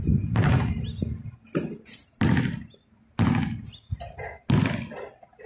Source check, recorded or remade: recorded